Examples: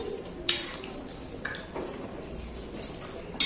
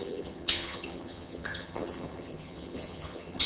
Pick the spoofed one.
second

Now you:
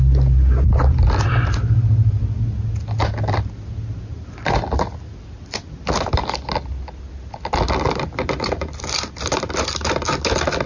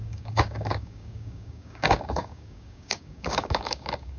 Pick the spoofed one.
second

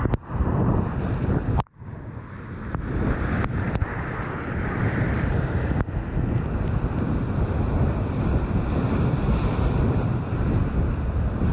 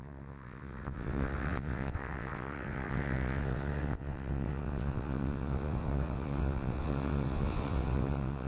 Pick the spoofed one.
second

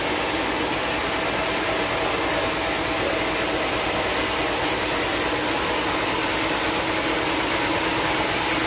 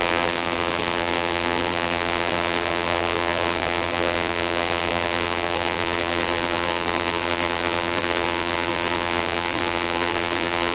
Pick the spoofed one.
second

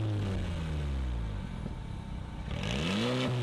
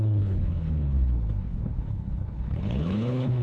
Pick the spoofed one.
second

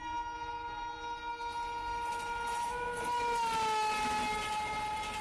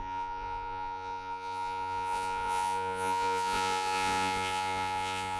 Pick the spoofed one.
second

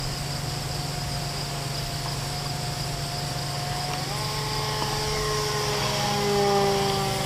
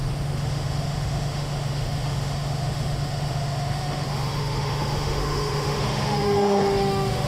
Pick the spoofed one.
second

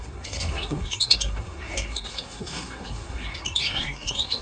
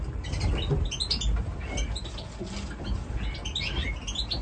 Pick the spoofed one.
first